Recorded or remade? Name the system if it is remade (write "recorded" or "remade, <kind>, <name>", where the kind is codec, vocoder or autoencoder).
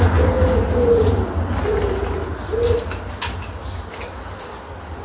recorded